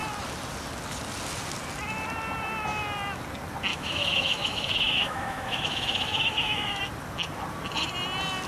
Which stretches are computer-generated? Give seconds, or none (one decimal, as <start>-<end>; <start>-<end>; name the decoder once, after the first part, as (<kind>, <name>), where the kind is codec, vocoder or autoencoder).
3.7-6.8 (autoencoder, DAC-VAE)

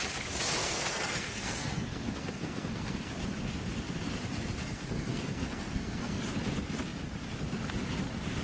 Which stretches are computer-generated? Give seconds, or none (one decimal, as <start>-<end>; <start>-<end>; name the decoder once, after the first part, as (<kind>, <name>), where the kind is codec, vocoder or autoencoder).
0.6-3.1 (codec, SNAC); 4.6-6.2

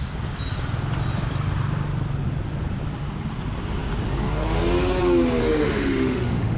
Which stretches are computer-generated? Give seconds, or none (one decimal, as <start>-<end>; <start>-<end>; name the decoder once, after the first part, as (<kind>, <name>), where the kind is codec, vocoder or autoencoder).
5.4-6.6 (autoencoder, DAC-VAE)

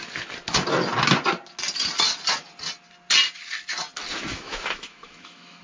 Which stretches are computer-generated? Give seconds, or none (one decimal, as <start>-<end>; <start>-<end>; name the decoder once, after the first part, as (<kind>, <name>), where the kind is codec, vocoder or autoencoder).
4.3-5.6 (autoencoder, DAC-VAE)

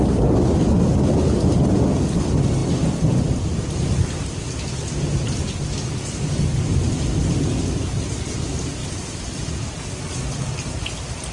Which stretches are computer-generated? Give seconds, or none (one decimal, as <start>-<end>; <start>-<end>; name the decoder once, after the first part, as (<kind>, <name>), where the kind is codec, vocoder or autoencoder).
none

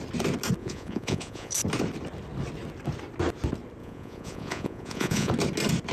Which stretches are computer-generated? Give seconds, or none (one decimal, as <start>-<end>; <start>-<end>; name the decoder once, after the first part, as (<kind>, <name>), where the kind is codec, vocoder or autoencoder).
0.6-1.5 (vocoder, Vocos); 3.8-5.3

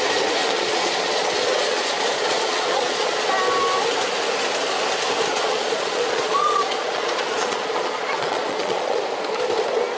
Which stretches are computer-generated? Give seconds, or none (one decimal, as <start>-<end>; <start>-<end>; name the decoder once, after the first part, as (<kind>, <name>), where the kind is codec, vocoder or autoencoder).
0.4-3.3 (vocoder, Vocos); 5.3-9.0

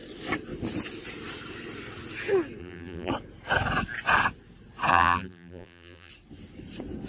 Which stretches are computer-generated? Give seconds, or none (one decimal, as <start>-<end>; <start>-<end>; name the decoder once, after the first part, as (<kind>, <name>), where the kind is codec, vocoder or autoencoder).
2.6-3.1 (vocoder, BigVGAN v2); 4.9-6.1